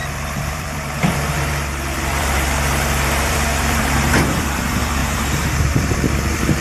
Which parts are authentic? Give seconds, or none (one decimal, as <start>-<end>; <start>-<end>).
none